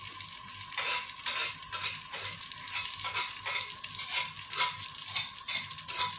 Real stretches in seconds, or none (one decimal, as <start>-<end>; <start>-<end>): 0.0-6.2